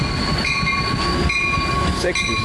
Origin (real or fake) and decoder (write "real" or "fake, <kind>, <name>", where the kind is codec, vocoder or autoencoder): real